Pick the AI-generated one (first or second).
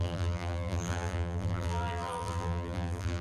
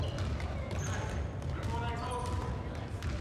first